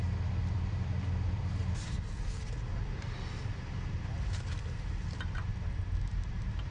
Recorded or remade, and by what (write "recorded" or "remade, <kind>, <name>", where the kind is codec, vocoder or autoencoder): recorded